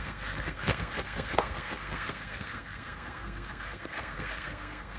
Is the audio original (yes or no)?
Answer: no